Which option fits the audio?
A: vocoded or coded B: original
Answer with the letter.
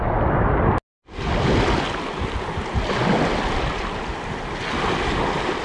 B